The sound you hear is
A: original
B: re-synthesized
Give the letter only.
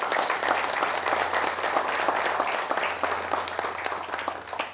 A